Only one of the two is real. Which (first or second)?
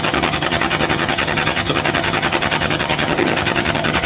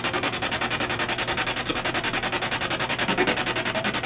second